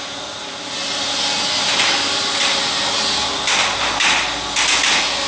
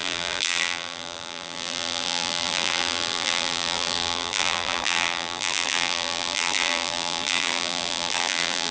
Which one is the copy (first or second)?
second